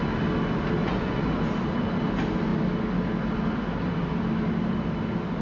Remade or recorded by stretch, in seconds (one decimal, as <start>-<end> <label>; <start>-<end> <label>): 0.0-0.8 recorded; 0.8-1.3 remade; 1.3-5.4 recorded